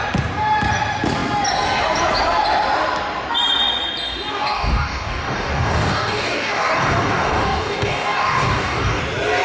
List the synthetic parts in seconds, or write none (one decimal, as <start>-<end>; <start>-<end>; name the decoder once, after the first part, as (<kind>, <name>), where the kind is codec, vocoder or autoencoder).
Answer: 4.3-9.0 (codec, DAC)